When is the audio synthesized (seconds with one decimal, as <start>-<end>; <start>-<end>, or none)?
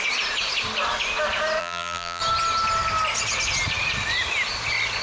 1.6-2.2